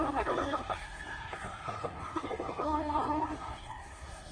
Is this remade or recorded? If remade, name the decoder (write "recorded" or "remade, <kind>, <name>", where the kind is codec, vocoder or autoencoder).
remade, codec, SNAC